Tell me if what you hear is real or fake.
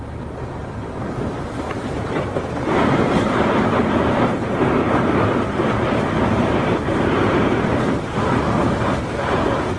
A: fake